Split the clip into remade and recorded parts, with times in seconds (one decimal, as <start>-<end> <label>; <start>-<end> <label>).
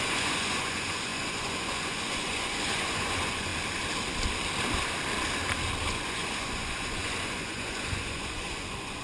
0.0-3.5 remade; 3.5-5.9 recorded; 5.9-9.0 remade